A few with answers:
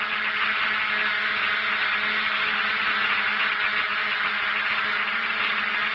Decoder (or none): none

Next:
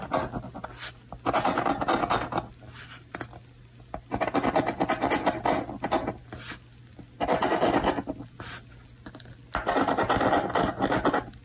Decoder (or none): none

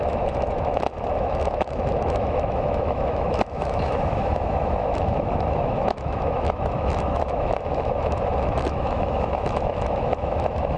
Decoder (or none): autoencoder, DAC-VAE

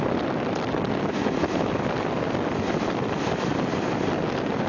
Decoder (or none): none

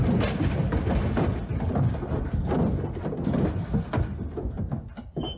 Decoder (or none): none